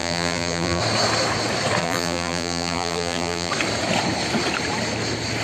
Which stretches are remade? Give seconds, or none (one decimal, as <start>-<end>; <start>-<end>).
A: 0.0-0.8; 1.8-3.5